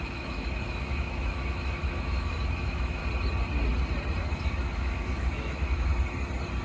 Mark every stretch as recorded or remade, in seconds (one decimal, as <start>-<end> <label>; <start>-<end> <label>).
0.0-3.0 remade; 3.0-4.2 recorded; 4.2-5.9 remade; 5.9-6.6 recorded

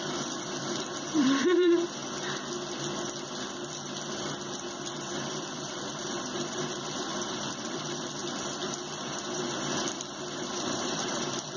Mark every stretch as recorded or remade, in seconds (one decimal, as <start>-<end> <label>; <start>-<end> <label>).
0.0-2.0 remade; 2.0-4.9 recorded; 4.9-11.6 remade

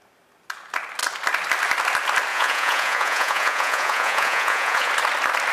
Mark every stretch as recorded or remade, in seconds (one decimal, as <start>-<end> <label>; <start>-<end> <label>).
0.0-2.3 recorded; 2.3-4.9 remade; 4.9-5.5 recorded

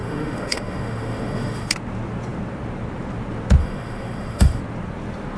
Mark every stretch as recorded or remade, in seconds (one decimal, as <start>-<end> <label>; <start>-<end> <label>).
0.0-1.7 remade; 1.7-3.6 recorded; 3.6-4.6 remade; 4.6-5.4 recorded

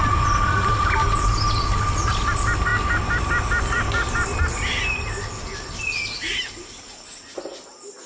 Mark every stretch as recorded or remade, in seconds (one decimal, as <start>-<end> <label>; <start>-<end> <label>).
0.0-8.1 recorded

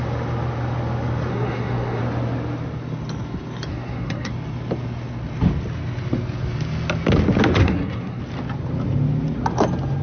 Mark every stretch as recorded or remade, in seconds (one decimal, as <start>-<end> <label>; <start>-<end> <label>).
0.0-1.3 recorded; 1.3-2.0 remade; 2.0-3.7 recorded; 3.7-4.3 remade; 4.3-7.6 recorded; 7.6-8.2 remade; 8.2-10.0 recorded

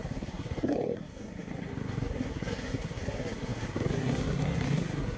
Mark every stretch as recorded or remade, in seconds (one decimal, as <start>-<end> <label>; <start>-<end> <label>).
0.0-5.2 remade